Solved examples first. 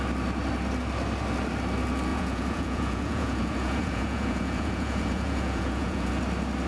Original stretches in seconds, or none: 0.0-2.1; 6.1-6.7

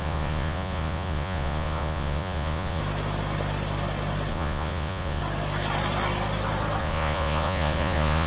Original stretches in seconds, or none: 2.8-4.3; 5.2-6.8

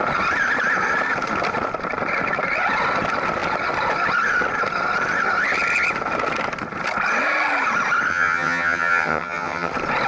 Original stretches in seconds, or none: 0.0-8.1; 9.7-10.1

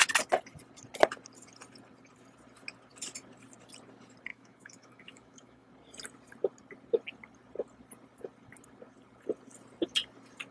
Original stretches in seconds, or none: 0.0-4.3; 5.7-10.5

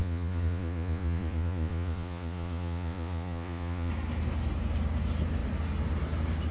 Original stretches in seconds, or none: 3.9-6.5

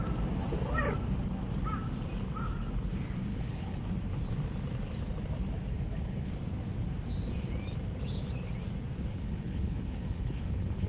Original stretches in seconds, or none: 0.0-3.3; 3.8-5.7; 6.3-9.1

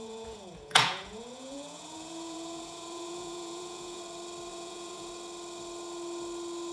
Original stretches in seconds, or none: 4.0-4.5; 5.1-6.7

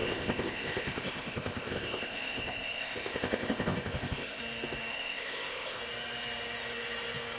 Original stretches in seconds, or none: 4.4-4.9; 5.8-7.4